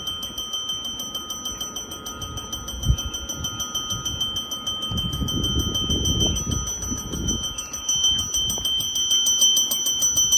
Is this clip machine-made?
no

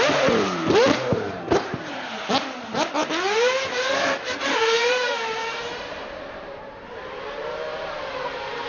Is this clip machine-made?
yes